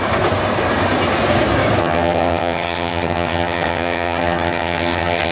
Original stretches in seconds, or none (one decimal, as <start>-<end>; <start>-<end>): 0.0-1.8